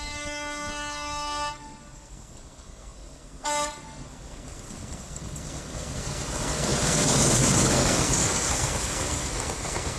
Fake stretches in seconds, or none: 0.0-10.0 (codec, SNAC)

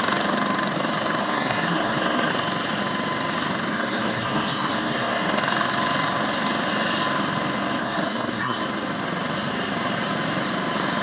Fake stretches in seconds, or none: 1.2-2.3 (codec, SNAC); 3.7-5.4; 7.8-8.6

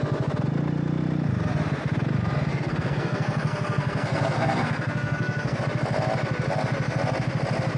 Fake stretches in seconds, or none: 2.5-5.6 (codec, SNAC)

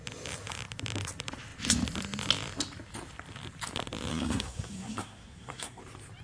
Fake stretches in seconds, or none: 4.1-5.8 (codec, SNAC)